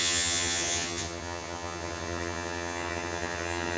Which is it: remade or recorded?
remade